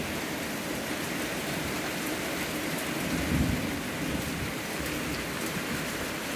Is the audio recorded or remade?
recorded